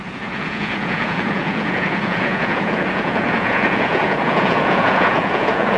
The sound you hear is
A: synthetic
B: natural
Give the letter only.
A